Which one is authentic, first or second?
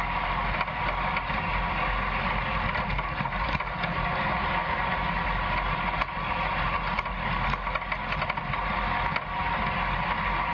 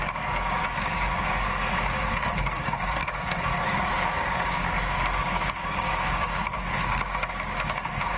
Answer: first